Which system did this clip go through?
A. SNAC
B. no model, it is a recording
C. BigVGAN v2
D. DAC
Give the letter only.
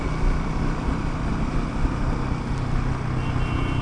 B